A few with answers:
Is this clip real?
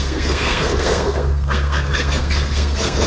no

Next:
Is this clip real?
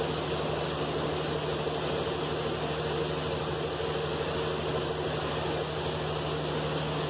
yes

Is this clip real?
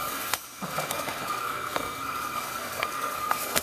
no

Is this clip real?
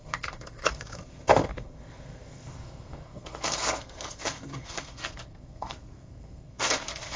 no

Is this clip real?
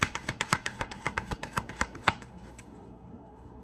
no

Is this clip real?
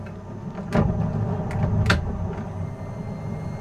yes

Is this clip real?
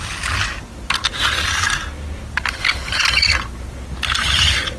yes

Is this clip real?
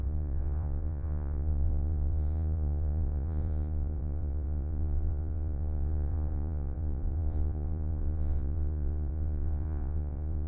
no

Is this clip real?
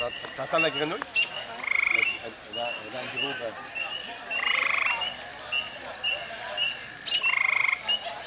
yes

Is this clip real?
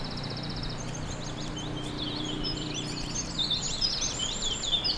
no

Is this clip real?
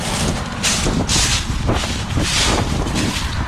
yes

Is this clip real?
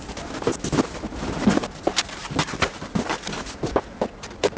yes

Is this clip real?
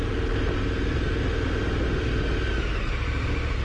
yes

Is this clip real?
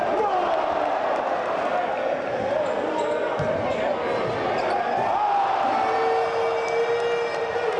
yes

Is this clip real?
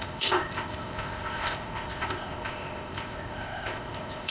no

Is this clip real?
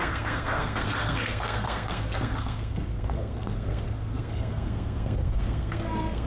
no